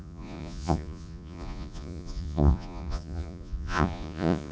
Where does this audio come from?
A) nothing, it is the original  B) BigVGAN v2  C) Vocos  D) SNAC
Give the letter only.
C